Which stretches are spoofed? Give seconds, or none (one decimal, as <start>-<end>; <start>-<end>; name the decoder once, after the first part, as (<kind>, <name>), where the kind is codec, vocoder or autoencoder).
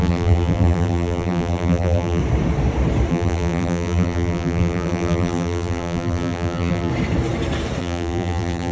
0.0-2.2 (vocoder, BigVGAN v2); 3.1-6.9; 7.8-8.7